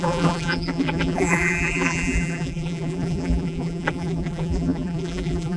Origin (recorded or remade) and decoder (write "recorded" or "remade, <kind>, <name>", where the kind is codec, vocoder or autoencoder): remade, vocoder, BigVGAN v2